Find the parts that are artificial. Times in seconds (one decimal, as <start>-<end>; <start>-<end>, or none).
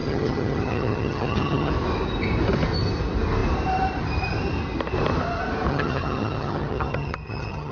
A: 0.0-1.7; 5.7-7.7